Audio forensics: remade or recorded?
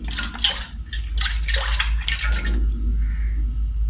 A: recorded